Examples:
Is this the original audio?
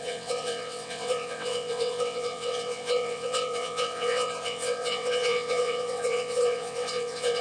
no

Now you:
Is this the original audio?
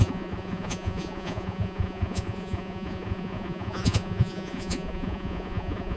no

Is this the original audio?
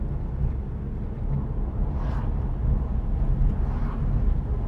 yes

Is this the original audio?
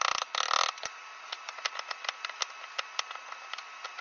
yes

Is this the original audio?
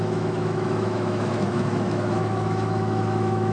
no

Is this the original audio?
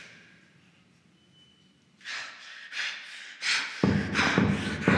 yes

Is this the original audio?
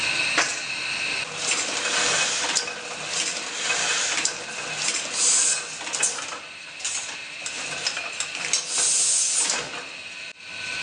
yes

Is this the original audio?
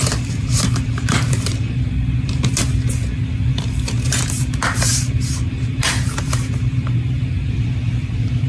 no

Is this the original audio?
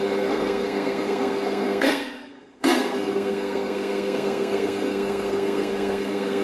no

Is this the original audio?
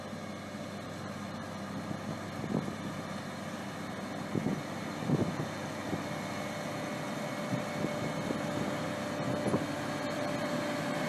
yes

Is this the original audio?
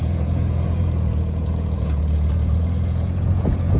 no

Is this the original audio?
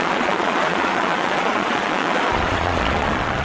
no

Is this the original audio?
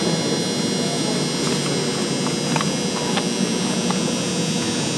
yes